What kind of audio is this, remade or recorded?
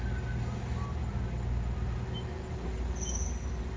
recorded